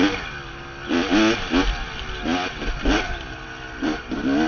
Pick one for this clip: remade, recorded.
recorded